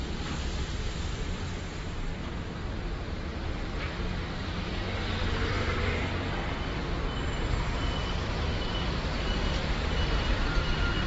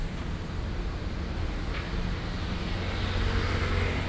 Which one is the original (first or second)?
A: second